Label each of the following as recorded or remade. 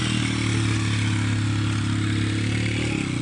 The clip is recorded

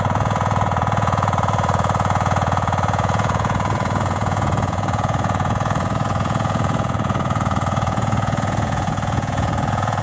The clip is remade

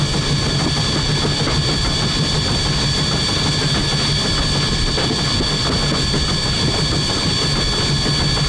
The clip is recorded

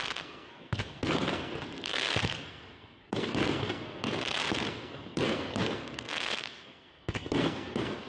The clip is remade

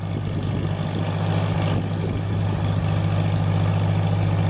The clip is recorded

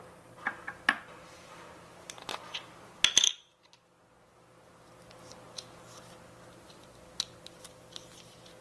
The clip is recorded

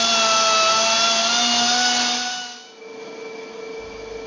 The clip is recorded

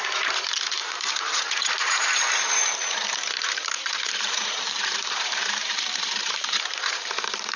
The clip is remade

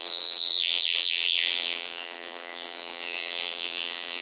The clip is remade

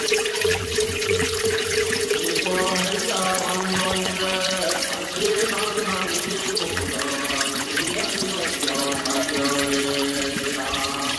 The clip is remade